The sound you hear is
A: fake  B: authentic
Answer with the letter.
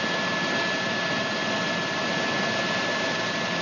B